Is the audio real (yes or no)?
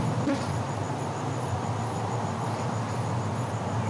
yes